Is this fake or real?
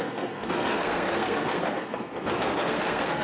fake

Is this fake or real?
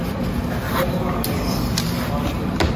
fake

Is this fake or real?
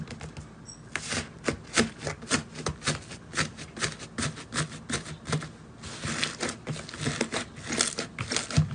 real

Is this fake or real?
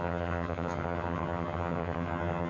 fake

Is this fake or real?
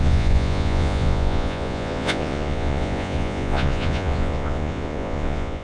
fake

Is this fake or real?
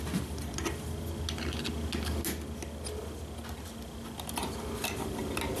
real